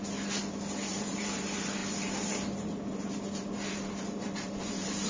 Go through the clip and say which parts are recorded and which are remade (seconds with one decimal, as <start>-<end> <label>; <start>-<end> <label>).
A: 0.0-0.9 recorded; 0.9-1.4 remade; 1.4-1.8 recorded; 1.8-5.1 remade